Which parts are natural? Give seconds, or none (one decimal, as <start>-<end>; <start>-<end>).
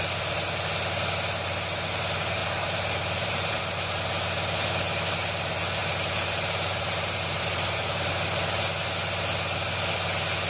0.0-2.4; 3.6-5.8; 8.1-10.5